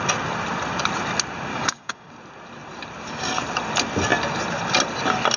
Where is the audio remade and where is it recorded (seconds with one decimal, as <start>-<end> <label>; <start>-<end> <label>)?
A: 0.0-1.5 recorded; 1.5-2.1 remade; 2.1-5.4 recorded